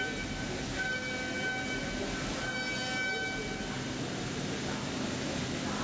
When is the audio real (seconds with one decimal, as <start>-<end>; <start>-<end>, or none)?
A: 0.0-5.8